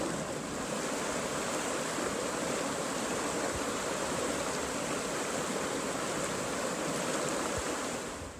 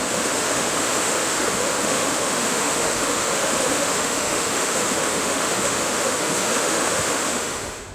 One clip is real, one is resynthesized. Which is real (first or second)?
first